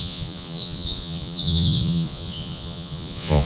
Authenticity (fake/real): fake